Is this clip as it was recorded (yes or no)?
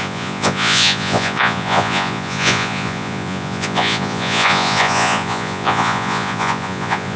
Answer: no